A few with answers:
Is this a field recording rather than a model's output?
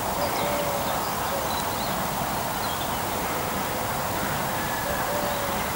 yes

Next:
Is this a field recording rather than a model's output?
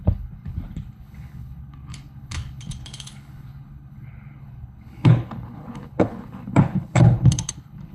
no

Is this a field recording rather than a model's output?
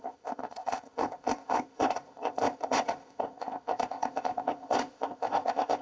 no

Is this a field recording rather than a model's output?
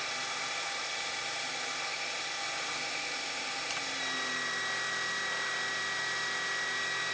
yes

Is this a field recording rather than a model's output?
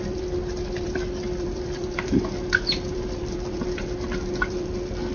no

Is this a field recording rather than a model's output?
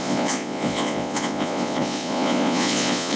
no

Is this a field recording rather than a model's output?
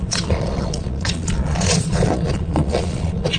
no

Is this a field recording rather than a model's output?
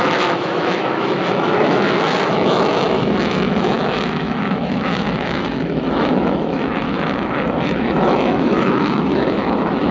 no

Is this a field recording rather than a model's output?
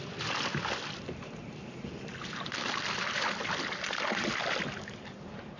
yes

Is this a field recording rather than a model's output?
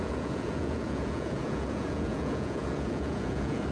no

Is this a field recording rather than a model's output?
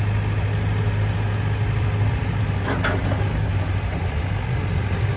yes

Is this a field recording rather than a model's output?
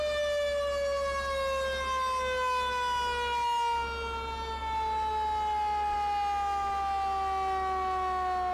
yes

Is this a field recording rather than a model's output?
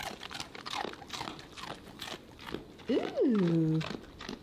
yes